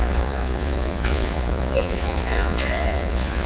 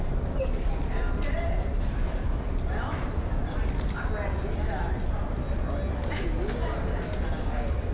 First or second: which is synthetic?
first